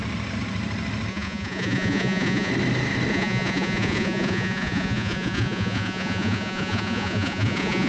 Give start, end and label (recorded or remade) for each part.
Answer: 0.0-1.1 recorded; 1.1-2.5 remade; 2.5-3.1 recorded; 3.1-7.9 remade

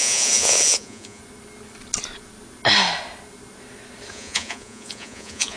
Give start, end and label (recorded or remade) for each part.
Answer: 0.0-1.2 remade; 1.2-4.1 recorded; 4.1-5.6 remade

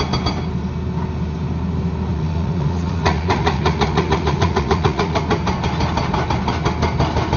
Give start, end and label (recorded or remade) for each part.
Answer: 0.0-2.1 recorded; 2.1-5.2 remade; 5.2-7.4 recorded

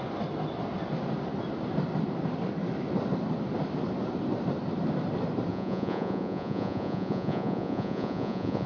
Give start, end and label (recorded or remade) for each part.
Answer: 0.0-5.5 recorded; 5.5-8.7 remade

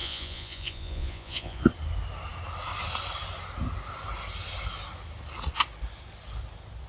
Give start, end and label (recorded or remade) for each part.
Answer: 0.0-1.6 remade; 1.6-6.9 recorded